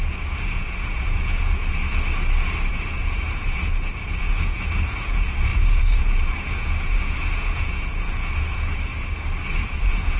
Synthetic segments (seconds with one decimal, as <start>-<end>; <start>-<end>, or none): 0.0-1.8; 2.7-8.9; 9.6-10.2